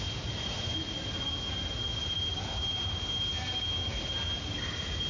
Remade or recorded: recorded